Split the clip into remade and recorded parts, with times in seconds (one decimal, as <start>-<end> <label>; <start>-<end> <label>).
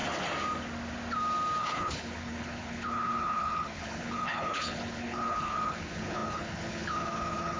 0.0-1.6 recorded; 1.6-7.6 remade